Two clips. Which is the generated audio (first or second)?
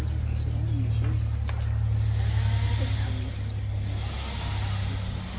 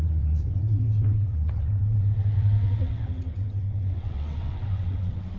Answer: second